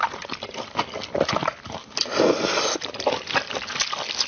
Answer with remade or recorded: recorded